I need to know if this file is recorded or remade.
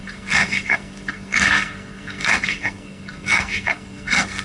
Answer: remade